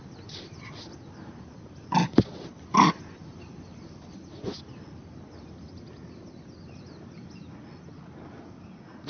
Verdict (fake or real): real